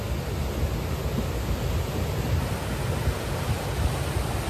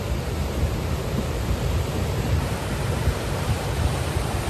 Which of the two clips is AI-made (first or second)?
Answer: second